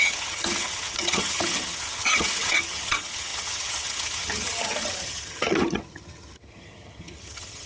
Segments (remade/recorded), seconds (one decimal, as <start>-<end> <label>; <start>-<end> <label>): 0.0-7.7 remade